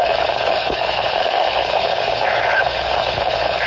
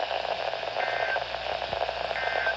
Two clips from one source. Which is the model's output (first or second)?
first